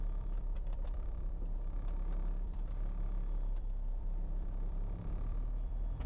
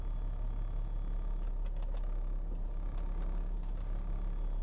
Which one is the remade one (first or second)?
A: first